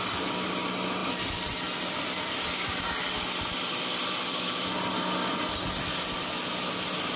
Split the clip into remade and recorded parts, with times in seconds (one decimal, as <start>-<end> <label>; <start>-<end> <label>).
0.0-7.2 recorded